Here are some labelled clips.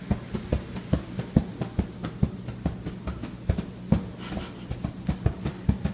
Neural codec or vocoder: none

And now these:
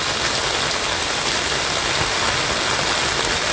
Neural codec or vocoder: none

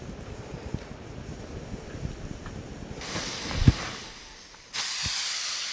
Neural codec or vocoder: none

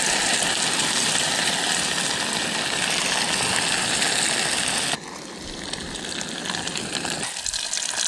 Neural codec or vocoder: none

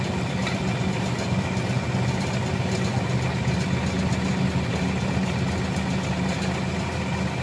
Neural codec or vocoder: none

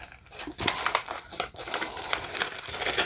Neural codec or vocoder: none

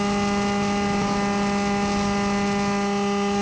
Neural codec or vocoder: none